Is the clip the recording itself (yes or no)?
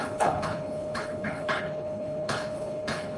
no